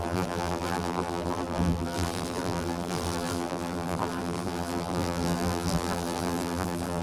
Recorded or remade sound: remade